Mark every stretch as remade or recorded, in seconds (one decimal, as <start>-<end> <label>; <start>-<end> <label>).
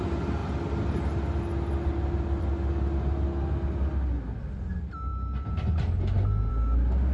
0.0-7.1 recorded